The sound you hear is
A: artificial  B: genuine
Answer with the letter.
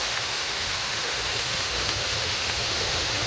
A